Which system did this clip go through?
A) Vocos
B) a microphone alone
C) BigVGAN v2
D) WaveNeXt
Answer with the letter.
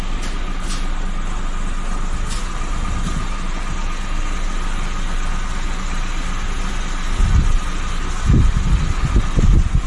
B